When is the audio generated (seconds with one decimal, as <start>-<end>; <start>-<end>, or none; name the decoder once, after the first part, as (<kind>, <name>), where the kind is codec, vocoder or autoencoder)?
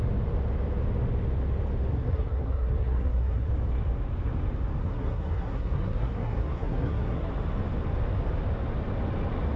1.9-3.5 (codec, SNAC); 4.8-7.3